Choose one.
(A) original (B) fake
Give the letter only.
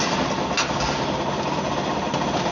A